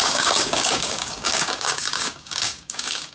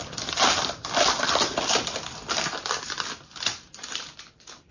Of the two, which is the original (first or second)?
second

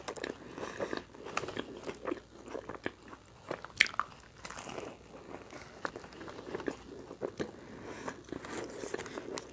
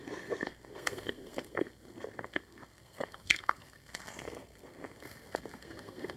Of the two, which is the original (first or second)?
first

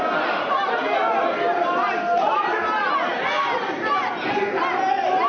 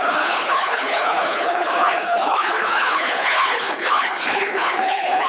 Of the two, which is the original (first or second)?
first